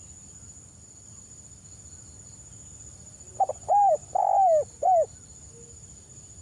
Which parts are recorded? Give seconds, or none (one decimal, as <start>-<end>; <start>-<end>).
0.0-6.4